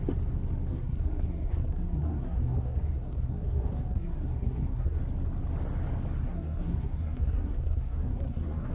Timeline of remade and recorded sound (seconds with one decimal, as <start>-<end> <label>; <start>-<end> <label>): 0.0-0.7 recorded; 0.7-5.0 remade; 5.0-6.2 recorded; 6.2-8.7 remade